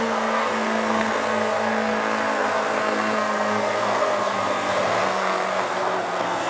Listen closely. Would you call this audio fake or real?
fake